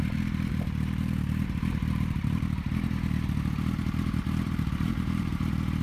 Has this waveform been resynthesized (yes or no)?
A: yes